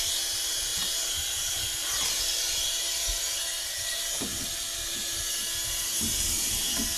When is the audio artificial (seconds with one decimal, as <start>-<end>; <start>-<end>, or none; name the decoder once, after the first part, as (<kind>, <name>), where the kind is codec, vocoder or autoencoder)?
none